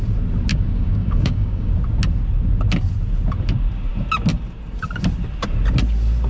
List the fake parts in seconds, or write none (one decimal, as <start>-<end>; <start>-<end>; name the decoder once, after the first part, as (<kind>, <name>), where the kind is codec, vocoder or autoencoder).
0.5-1.7 (codec, DAC)

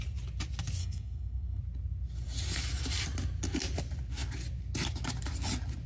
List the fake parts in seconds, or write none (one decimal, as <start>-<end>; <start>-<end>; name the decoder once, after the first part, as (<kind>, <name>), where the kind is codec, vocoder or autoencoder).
0.8-1.6 (codec, SNAC)